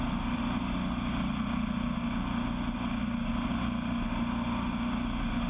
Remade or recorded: recorded